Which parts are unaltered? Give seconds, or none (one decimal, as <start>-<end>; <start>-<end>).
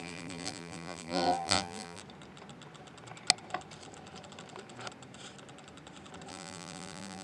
2.0-6.3